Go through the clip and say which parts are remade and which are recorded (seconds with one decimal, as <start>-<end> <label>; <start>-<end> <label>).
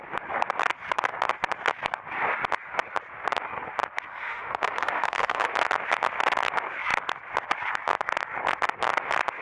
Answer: 0.0-4.1 recorded; 4.1-5.5 remade; 5.5-9.4 recorded